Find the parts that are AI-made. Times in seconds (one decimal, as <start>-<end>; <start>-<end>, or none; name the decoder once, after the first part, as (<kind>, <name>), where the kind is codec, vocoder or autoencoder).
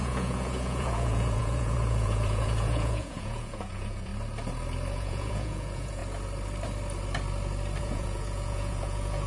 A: 0.0-4.1 (vocoder, Vocos); 4.9-6.0; 7.8-9.3